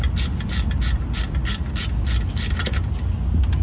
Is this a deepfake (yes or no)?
no